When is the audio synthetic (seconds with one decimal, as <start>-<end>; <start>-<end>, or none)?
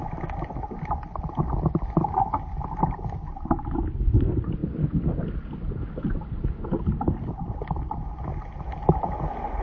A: none